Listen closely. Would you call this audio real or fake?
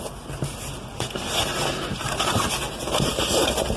real